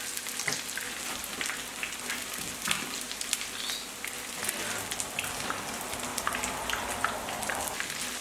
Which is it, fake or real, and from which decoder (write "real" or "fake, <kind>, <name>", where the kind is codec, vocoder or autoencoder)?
real